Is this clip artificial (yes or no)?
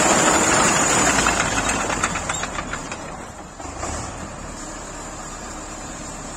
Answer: yes